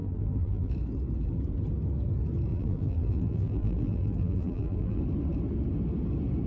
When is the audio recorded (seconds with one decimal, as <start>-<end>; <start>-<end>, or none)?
0.7-2.5; 5.0-6.5